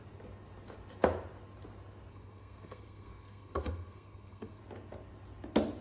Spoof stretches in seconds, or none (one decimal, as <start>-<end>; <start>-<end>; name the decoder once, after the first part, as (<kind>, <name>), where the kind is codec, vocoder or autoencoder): 2.1-4.6 (codec, SNAC)